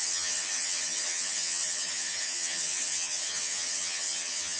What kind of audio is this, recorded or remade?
remade